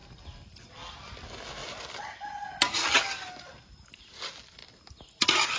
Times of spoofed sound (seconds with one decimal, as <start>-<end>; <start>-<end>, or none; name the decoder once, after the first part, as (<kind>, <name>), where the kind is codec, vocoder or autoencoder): none